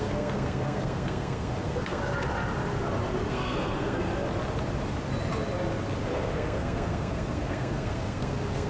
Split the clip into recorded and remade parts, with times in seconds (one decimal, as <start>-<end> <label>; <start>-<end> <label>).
0.0-2.0 remade; 2.0-3.3 recorded; 3.3-4.1 remade; 4.1-6.0 recorded; 6.0-8.7 remade